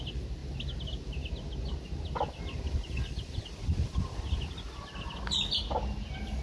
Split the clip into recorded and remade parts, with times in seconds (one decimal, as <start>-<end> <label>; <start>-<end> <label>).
0.0-6.4 recorded